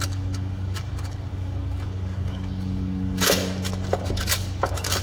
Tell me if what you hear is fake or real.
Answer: fake